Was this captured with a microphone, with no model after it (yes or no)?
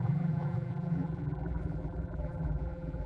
no